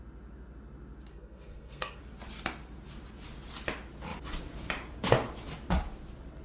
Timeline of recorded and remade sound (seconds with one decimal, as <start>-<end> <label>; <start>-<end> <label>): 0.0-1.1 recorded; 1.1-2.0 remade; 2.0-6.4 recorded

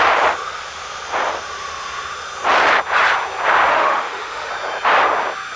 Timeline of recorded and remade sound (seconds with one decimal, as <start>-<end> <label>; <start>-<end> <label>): 0.0-3.7 recorded; 3.7-4.5 remade; 4.5-5.6 recorded

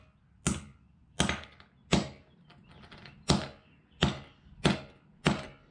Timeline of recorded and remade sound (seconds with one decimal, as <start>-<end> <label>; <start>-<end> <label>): 0.0-5.7 recorded

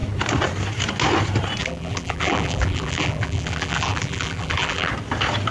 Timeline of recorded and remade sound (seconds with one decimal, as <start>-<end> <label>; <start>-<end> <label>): 0.0-1.6 recorded; 1.6-4.9 remade; 4.9-5.5 recorded

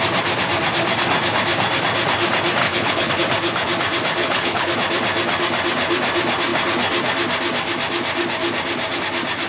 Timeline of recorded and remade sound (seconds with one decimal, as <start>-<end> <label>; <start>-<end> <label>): 0.0-2.6 recorded; 2.6-3.1 remade; 3.1-4.2 recorded; 4.2-4.7 remade; 4.7-9.5 recorded